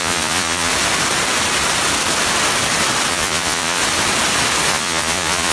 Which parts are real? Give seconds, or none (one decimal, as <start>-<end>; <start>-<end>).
0.7-3.1; 3.8-4.7